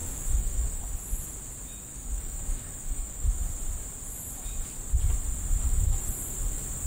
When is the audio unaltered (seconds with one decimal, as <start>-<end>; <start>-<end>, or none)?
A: 0.8-1.9; 3.6-5.6; 6.1-6.9